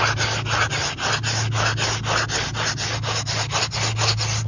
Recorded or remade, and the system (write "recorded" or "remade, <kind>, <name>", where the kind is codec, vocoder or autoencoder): recorded